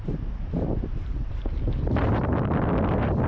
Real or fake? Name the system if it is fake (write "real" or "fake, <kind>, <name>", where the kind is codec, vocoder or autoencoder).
real